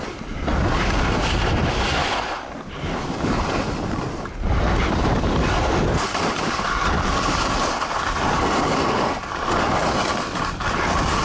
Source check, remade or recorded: recorded